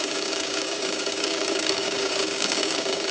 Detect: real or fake fake